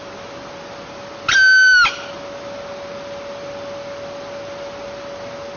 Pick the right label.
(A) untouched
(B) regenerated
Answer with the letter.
A